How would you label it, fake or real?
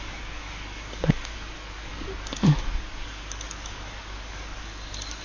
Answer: fake